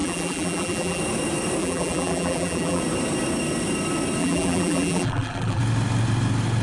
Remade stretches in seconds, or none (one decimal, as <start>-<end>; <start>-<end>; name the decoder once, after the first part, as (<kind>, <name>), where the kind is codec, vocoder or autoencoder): 0.0-1.0 (vocoder, BigVGAN v2); 1.6-2.8; 4.2-5.6